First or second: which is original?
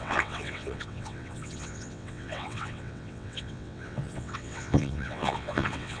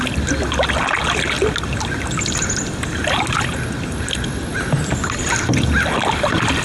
second